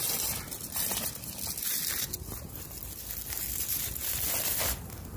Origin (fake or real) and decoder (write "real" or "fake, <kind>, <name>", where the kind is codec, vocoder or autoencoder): real